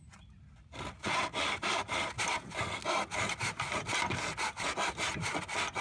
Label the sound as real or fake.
real